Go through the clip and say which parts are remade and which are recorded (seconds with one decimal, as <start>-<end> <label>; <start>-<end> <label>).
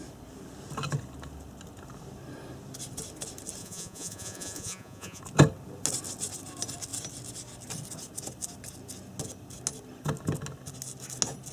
0.0-3.6 recorded; 3.6-5.2 remade; 5.2-11.5 recorded